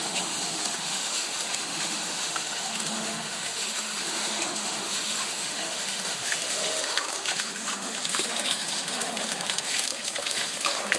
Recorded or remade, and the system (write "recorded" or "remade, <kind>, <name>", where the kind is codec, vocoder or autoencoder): remade, autoencoder, DAC-VAE